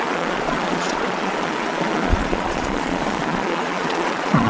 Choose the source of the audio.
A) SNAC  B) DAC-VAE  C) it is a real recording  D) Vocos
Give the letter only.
D